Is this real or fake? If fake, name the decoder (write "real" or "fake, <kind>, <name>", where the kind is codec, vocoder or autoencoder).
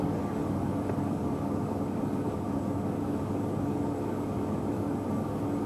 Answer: fake, codec, DAC